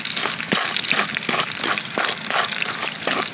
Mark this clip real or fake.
real